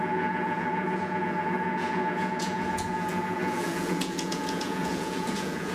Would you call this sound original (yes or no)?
no